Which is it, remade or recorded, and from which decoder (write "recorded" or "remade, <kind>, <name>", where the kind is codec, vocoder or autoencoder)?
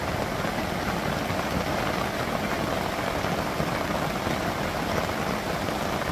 recorded